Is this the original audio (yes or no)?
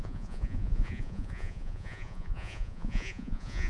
no